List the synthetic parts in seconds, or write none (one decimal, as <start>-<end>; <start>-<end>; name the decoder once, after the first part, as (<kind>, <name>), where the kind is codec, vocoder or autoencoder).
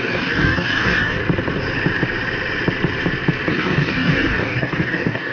0.0-1.2 (codec, DAC); 3.5-5.3